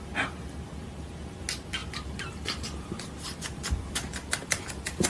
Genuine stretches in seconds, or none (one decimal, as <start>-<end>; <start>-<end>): 0.0-1.8